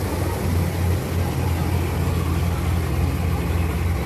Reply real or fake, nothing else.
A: real